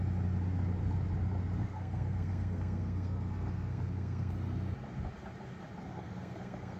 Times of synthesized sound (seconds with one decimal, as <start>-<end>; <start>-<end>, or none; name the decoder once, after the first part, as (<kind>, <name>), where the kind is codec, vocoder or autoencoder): 1.6-4.3 (codec, SNAC); 5.9-6.8